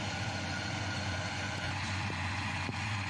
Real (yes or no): no